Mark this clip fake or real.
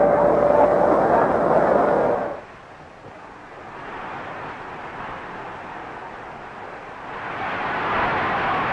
real